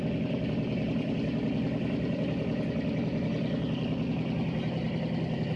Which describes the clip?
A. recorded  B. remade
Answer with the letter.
A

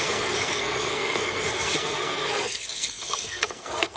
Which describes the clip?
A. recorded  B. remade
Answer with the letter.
B